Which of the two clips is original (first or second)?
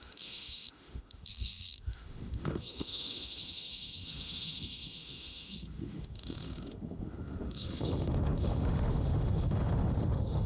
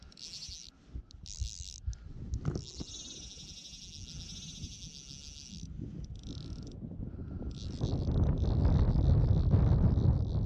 second